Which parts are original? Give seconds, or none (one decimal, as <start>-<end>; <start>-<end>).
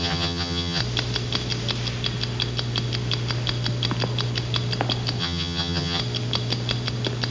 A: 0.8-5.2; 6.0-7.3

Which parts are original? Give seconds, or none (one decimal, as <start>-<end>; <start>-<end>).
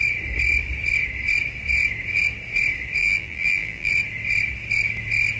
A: 0.0-3.0; 3.9-5.4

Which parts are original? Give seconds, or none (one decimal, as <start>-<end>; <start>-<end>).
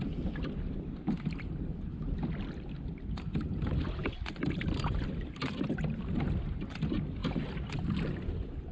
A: 0.0-8.7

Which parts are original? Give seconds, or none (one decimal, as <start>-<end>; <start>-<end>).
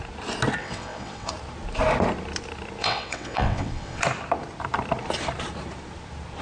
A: 0.0-0.6; 1.3-2.8; 4.0-6.4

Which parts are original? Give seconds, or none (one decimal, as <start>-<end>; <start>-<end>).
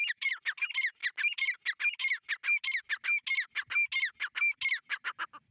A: 0.0-5.5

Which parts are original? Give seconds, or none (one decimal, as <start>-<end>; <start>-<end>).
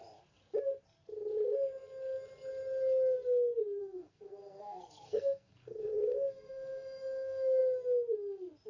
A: 0.0-3.8; 7.6-8.7